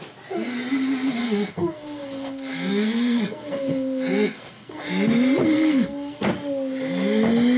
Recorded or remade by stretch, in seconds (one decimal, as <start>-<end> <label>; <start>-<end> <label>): 0.0-1.2 recorded; 1.2-4.9 remade; 4.9-5.4 recorded; 5.4-6.3 remade; 6.3-7.6 recorded